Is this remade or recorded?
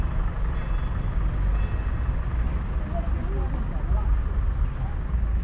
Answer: recorded